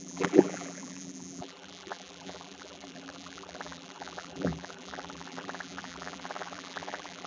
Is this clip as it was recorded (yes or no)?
no